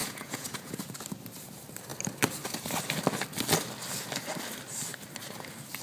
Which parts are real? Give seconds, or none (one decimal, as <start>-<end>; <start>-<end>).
0.8-5.8